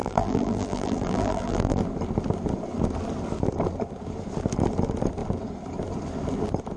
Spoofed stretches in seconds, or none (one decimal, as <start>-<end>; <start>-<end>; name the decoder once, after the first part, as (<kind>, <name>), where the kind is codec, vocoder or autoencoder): 0.0-1.8 (vocoder, BigVGAN v2)